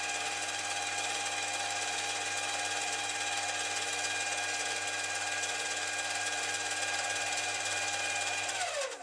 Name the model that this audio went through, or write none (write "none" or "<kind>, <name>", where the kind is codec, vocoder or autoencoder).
none